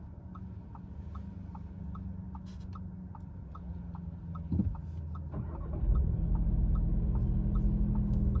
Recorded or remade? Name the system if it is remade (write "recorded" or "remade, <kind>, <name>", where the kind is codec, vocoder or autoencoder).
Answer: recorded